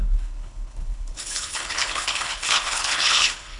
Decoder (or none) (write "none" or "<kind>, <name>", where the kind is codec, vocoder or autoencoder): codec, HILCodec